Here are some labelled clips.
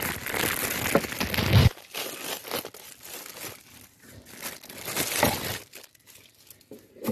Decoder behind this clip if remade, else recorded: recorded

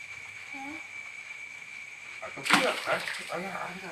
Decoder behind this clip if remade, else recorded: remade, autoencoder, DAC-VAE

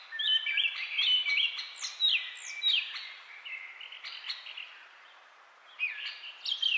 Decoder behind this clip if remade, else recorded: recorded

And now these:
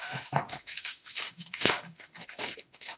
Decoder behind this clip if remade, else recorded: remade, autoencoder, DAC-VAE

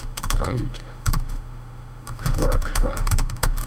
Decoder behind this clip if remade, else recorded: remade, autoencoder, DAC-VAE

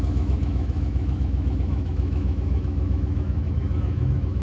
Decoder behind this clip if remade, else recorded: remade, autoencoder, DAC-VAE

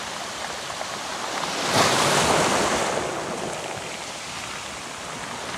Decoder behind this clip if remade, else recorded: recorded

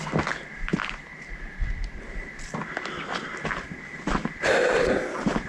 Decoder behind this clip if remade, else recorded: recorded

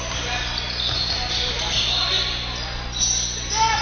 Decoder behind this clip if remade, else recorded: recorded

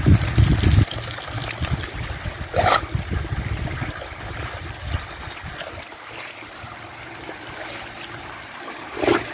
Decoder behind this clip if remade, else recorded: recorded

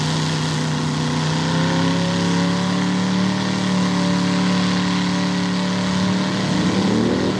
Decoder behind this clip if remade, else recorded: recorded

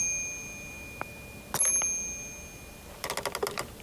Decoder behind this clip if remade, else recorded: recorded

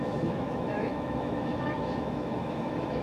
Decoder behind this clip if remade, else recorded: remade, autoencoder, DAC-VAE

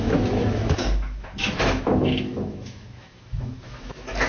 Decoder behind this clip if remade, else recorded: remade, autoencoder, DAC-VAE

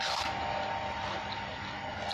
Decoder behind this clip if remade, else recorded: recorded